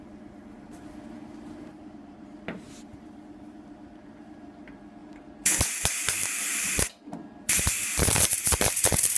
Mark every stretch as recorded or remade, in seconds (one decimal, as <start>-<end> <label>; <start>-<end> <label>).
0.0-5.0 remade; 5.0-7.4 recorded; 7.4-9.2 remade